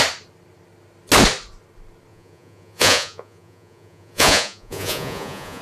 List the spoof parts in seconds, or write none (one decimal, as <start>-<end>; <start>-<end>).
2.1-5.6